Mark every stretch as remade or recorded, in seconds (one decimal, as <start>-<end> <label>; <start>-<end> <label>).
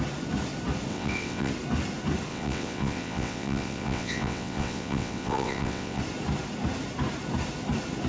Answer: 0.0-0.9 recorded; 0.9-1.5 remade; 1.5-2.3 recorded; 2.3-6.0 remade; 6.0-8.1 recorded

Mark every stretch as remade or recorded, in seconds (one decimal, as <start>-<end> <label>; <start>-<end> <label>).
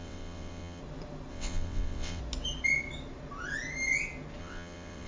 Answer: 0.0-0.8 remade; 0.8-1.3 recorded; 1.3-2.2 remade; 2.2-4.4 recorded; 4.4-5.1 remade